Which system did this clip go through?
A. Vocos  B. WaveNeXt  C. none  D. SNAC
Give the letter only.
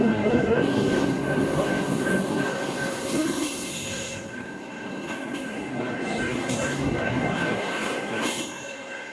D